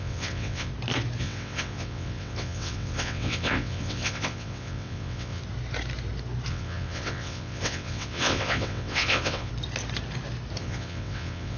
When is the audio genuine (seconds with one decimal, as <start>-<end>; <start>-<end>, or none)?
0.7-1.2; 5.4-6.5; 9.5-10.6